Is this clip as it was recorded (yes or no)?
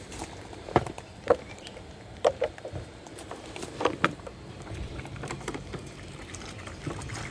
no